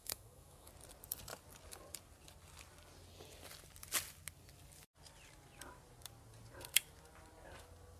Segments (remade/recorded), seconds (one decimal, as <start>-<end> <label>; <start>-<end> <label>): 0.0-0.7 remade; 0.7-8.0 recorded